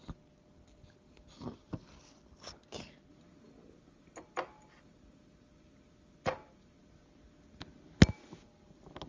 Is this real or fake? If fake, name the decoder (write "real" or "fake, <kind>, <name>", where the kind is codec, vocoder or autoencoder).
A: real